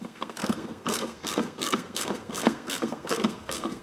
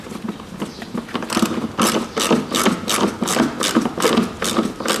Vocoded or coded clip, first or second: first